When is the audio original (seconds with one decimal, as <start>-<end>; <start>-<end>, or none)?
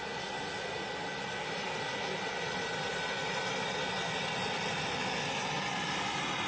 0.0-1.1; 5.0-6.5